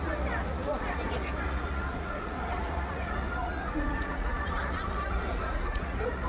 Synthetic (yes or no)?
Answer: yes